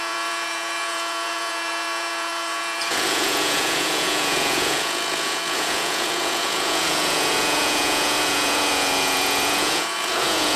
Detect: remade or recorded remade